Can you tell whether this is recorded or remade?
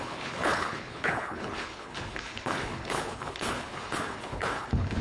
remade